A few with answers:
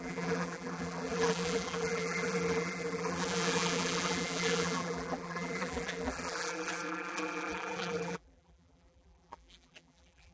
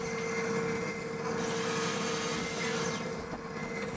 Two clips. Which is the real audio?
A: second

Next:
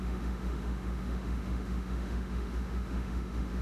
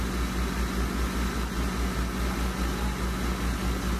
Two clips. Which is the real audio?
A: second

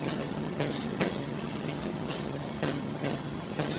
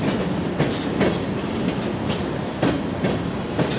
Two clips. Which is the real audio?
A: second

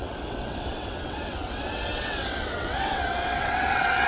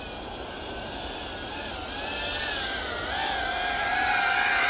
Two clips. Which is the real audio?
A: second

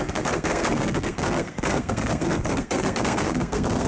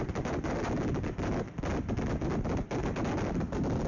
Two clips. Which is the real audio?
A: second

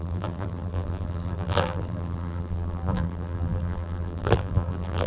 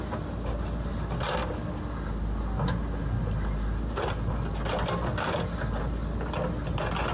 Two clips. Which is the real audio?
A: second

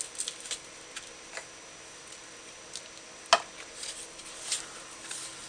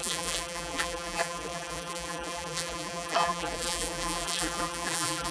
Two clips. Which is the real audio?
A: first